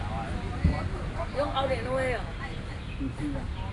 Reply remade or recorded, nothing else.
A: recorded